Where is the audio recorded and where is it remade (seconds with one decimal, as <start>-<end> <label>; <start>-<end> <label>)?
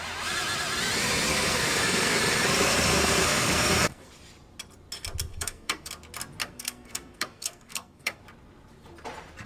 0.0-1.3 recorded; 1.3-2.2 remade; 2.2-2.9 recorded; 2.9-4.1 remade; 4.1-5.3 recorded; 5.3-5.9 remade; 5.9-6.4 recorded; 6.4-8.2 remade; 8.2-9.5 recorded